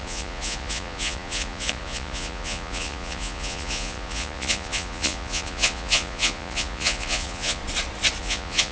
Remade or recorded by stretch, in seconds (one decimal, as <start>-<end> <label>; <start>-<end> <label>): 0.0-7.6 remade; 7.6-8.2 recorded; 8.2-8.7 remade